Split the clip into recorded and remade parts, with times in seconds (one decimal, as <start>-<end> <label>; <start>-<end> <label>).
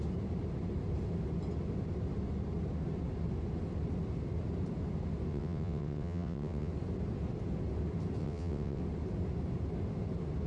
0.0-5.3 recorded; 5.3-6.7 remade; 6.7-8.2 recorded; 8.2-8.8 remade; 8.8-10.5 recorded